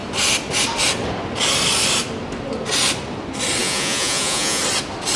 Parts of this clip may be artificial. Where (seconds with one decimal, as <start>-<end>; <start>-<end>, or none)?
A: 3.6-4.6